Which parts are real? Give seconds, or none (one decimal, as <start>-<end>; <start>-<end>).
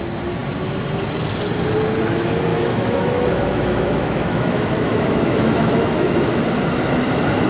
0.0-2.5; 6.5-7.5